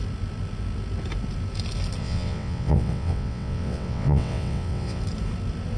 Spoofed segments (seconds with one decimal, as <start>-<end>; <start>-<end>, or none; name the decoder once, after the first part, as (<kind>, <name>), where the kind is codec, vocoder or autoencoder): 2.0-5.0 (vocoder, WaveNeXt)